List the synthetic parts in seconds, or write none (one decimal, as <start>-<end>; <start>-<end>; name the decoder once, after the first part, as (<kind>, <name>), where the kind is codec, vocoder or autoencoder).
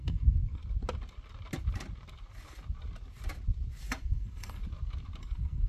0.0-0.6 (codec, SNAC); 4.0-4.6; 5.2-5.7